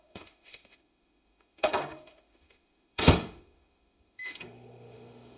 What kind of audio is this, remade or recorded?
remade